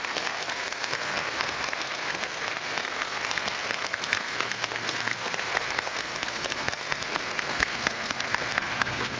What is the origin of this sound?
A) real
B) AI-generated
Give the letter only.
B